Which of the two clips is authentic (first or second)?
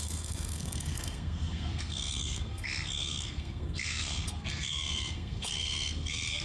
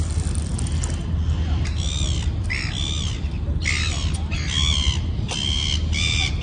second